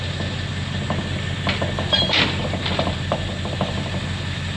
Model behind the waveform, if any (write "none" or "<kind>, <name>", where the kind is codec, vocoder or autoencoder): none